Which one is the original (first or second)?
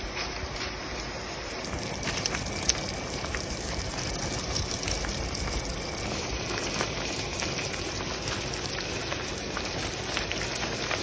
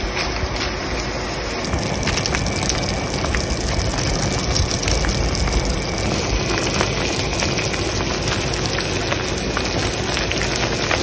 second